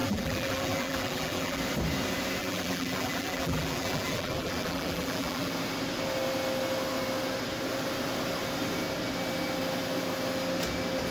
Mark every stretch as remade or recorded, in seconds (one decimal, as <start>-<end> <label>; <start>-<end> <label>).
0.0-1.6 remade; 1.6-2.4 recorded; 2.4-5.5 remade; 5.5-11.1 recorded